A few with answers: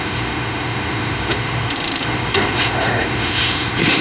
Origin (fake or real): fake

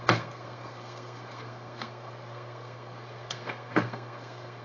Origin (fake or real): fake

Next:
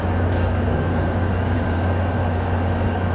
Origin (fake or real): fake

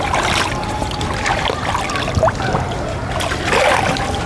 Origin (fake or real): real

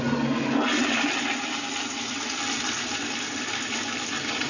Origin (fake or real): real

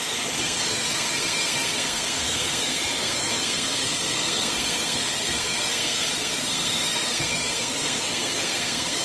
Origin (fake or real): fake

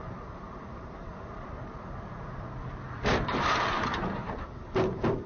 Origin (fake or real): fake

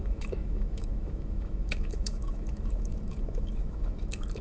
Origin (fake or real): fake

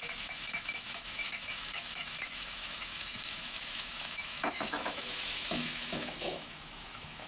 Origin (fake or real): fake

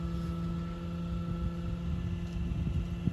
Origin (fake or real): real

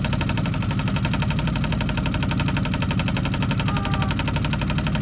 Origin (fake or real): real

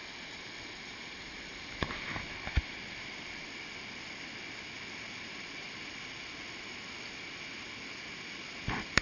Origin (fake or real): real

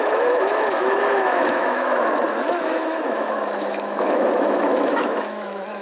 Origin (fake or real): fake